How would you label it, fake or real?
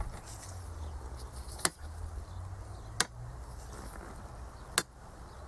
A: real